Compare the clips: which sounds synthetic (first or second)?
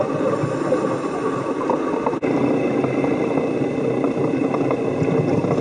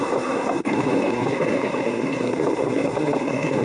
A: second